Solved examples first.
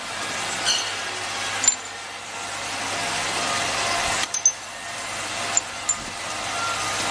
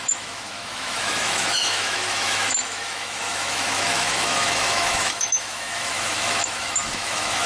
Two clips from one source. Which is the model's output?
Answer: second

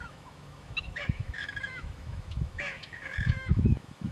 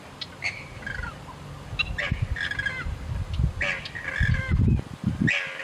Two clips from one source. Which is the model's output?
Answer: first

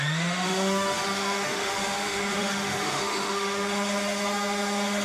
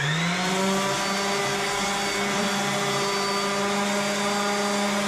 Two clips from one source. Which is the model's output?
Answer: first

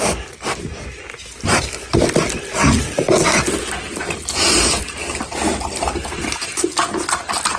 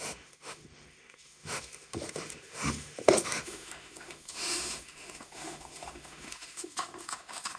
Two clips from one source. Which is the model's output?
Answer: second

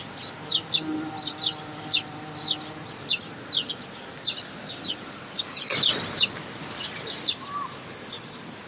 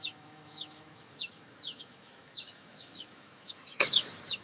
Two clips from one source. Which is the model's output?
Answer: second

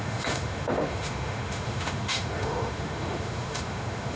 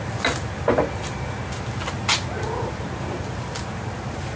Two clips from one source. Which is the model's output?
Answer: first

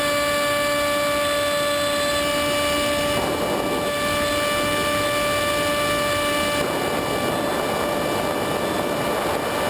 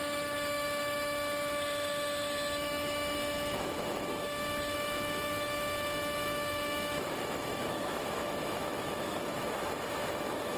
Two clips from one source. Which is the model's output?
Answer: second